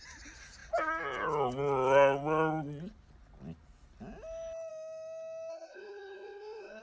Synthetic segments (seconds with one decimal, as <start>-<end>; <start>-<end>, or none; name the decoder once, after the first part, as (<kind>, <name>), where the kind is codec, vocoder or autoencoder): 5.5-6.8 (codec, SNAC)